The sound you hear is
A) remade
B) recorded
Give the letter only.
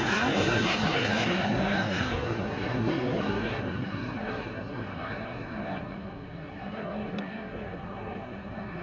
A